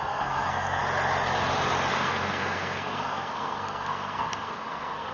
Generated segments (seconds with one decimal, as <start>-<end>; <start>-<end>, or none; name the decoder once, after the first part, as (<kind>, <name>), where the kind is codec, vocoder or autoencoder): 0.0-0.8 (codec, SNAC); 1.9-5.1